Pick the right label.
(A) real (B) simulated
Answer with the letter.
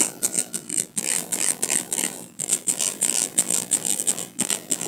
B